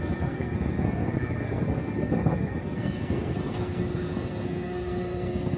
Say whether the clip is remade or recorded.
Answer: remade